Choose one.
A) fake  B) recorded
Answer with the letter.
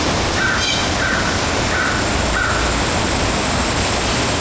B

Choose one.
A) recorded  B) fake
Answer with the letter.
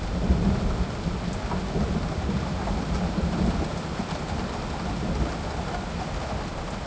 A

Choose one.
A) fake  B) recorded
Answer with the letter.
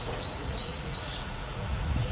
A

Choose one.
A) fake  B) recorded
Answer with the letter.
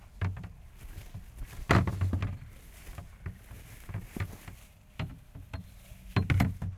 B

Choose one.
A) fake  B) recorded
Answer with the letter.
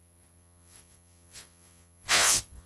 A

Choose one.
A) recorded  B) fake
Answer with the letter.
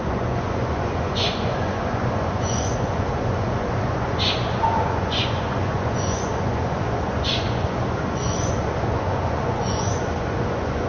B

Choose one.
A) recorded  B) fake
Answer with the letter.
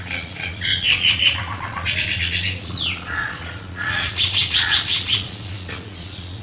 B